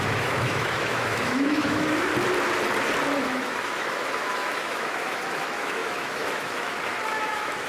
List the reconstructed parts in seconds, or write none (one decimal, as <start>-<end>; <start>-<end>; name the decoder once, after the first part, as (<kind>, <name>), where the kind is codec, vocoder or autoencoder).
0.0-2.1 (autoencoder, DAC-VAE); 3.2-7.7